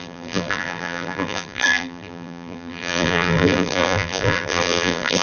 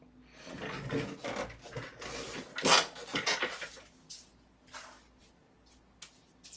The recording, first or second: second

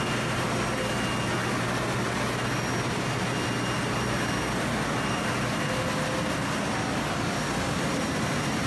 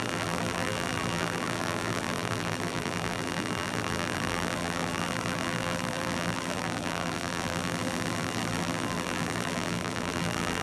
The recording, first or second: first